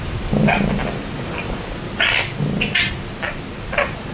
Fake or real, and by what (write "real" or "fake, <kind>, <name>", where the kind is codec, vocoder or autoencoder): real